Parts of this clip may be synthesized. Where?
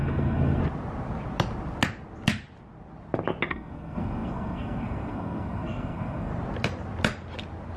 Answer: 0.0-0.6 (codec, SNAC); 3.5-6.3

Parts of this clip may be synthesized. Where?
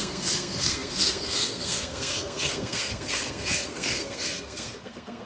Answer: 0.0-5.3 (codec, SNAC)